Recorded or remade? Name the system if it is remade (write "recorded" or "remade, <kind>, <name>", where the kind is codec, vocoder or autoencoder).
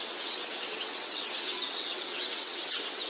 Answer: remade, vocoder, WaveNeXt